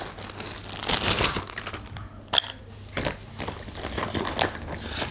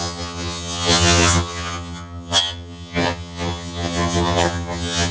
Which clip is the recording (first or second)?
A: first